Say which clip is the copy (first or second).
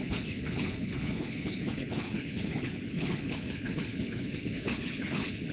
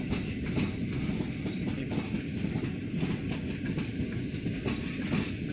first